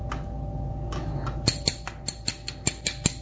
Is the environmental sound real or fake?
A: real